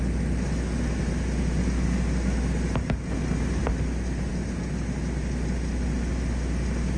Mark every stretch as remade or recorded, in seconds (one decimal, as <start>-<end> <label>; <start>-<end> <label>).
0.0-7.0 recorded

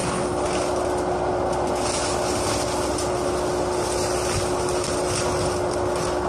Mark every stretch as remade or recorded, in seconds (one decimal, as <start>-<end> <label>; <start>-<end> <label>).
0.0-6.3 recorded

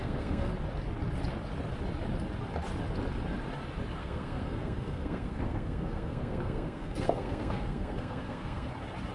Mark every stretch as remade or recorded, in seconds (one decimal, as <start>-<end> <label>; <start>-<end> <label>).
0.0-0.5 remade; 0.5-4.0 recorded; 4.0-8.7 remade; 8.7-9.1 recorded

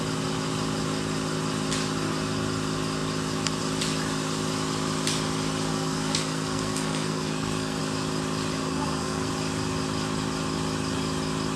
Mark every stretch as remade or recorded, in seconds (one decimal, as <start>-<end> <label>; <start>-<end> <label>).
0.0-5.7 recorded; 5.7-7.8 remade; 7.8-8.6 recorded; 8.6-9.3 remade; 9.3-11.6 recorded

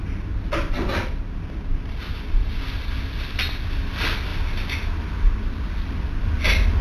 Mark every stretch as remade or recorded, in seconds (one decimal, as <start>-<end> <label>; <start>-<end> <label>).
0.0-6.8 recorded

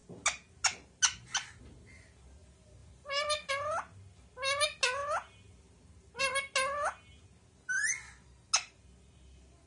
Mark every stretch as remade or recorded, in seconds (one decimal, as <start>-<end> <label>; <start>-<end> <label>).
0.0-9.7 recorded

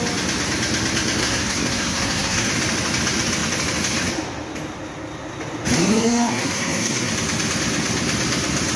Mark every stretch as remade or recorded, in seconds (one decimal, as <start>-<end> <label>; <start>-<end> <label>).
0.0-1.2 recorded; 1.2-2.5 remade; 2.5-5.8 recorded; 5.8-7.1 remade; 7.1-8.8 recorded

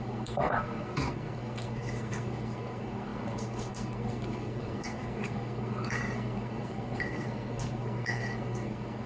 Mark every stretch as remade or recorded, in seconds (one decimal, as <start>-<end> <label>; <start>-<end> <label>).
0.0-9.1 remade